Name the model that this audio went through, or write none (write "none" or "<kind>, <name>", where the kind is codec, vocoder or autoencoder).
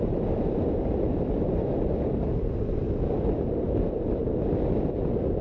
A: none